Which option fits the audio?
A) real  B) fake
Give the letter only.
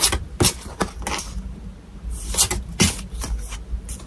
A